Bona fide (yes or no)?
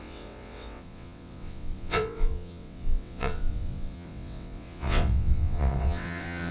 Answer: no